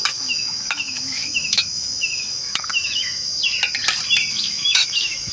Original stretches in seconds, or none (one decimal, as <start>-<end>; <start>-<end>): 3.4-4.3